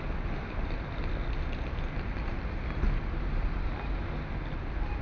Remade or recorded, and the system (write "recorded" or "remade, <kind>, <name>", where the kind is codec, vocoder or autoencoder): recorded